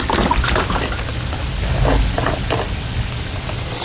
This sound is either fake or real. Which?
real